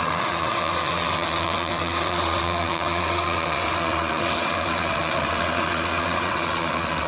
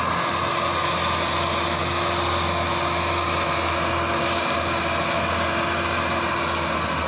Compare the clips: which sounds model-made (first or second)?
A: first